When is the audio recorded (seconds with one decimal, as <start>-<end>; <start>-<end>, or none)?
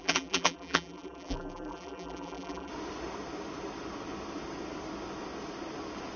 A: 2.7-6.2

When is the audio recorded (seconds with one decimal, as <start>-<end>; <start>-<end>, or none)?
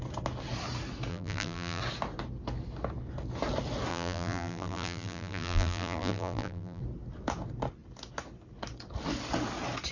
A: 0.0-1.1; 1.8-3.9; 6.8-9.9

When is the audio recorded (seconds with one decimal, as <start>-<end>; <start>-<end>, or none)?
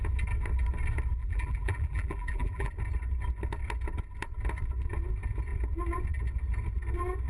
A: 0.0-1.2; 2.7-7.3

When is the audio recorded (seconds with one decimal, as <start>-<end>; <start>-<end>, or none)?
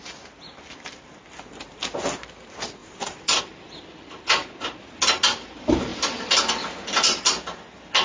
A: 0.0-2.8; 3.4-8.0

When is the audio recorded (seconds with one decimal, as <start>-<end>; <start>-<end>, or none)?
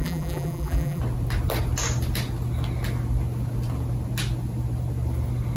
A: 1.0-5.6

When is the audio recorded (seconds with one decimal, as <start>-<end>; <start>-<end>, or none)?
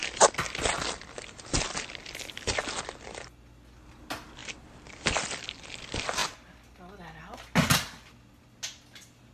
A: 0.0-4.4; 5.8-9.3